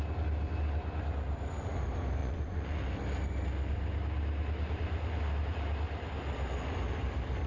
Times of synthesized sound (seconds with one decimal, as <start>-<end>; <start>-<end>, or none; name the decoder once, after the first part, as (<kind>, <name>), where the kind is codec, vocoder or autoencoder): 2.2-2.8 (vocoder, Vocos)